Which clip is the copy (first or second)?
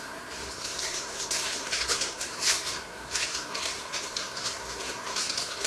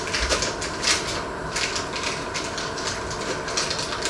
first